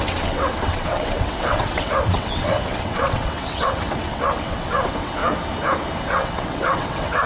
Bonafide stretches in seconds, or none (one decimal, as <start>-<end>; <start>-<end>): 5.2-6.0